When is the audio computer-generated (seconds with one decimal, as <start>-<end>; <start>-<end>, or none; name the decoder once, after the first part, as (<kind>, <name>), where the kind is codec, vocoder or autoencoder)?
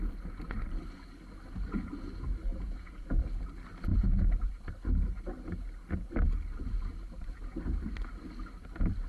2.5-3.2 (vocoder, Vocos); 3.9-4.5